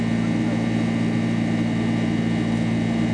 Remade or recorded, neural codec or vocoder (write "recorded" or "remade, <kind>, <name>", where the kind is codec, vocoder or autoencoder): recorded